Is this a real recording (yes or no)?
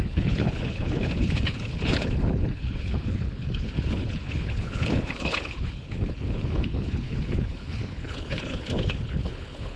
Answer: no